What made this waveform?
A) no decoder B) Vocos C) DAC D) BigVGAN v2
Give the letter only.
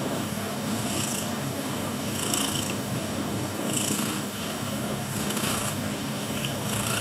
C